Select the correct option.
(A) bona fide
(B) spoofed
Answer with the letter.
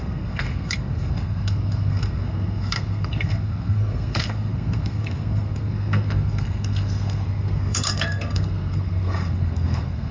B